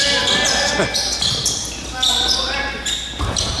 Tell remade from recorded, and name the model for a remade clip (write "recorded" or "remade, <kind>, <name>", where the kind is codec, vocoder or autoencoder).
recorded